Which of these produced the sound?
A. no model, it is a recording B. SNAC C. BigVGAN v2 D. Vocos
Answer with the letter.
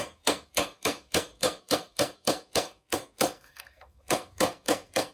B